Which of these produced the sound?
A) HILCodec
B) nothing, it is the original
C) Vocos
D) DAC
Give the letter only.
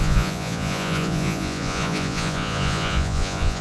C